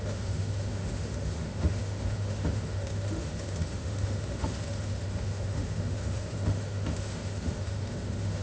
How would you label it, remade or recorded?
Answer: remade